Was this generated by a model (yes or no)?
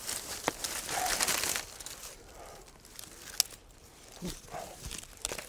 no